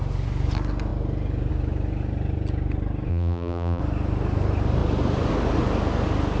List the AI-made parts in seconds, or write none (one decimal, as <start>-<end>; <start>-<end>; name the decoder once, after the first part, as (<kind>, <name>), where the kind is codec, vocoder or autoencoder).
3.1-3.8 (vocoder, BigVGAN v2)